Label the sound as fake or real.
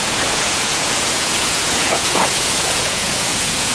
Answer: fake